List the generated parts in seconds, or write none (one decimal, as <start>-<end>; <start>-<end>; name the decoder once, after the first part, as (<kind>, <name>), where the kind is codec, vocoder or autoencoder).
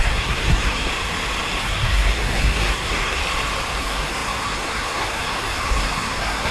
0.0-0.9 (codec, SNAC); 1.6-3.2; 3.8-6.5